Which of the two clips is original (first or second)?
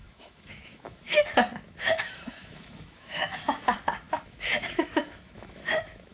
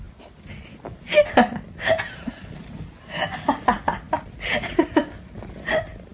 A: second